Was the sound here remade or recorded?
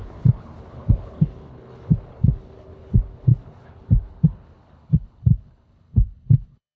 remade